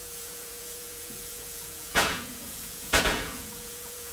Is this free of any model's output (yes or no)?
no